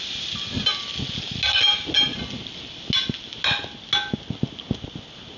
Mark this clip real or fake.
real